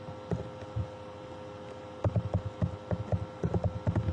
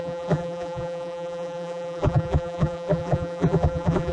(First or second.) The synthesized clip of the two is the second